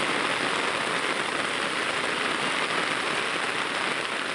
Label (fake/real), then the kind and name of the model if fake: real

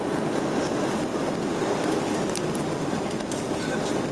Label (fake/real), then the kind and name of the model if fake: real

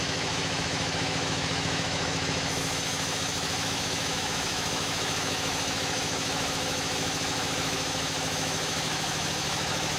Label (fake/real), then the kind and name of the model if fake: fake, autoencoder, DAC-VAE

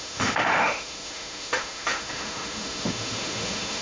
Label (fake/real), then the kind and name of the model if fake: fake, autoencoder, DAC-VAE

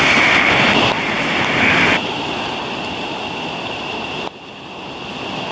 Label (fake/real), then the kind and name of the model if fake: real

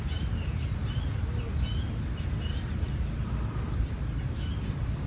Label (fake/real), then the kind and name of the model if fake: real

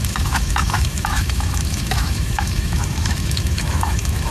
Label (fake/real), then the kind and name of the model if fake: fake, autoencoder, DAC-VAE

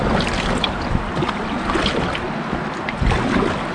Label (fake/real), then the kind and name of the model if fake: real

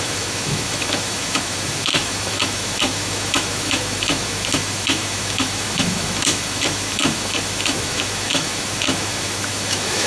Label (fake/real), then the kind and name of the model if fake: fake, autoencoder, DAC-VAE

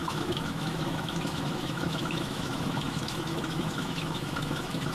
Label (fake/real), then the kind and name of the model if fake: fake, autoencoder, DAC-VAE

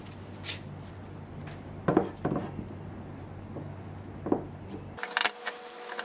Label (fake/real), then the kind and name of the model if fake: real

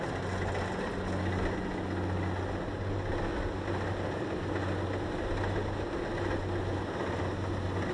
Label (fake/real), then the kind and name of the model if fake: real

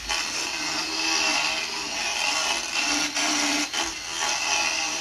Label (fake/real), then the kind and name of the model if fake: real